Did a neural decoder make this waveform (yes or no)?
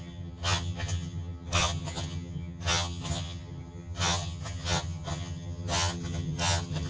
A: yes